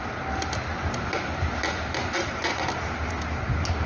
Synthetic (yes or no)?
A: no